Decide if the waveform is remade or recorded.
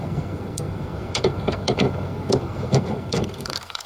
remade